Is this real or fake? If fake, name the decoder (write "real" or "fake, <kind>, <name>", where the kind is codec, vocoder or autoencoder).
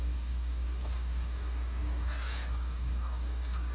fake, codec, DAC